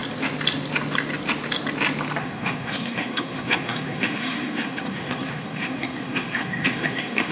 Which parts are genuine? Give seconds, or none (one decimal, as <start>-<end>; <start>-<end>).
0.0-2.2